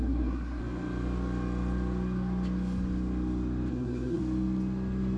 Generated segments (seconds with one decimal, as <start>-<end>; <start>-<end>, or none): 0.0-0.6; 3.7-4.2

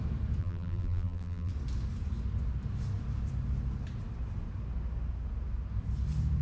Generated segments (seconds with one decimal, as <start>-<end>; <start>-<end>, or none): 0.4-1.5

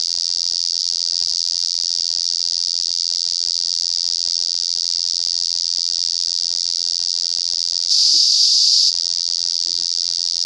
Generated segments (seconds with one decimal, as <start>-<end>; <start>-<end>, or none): 0.0-7.9; 8.9-10.5

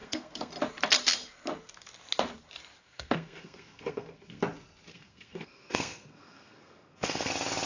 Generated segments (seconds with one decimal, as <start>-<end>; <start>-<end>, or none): 0.0-0.5; 2.8-4.4; 4.9-7.3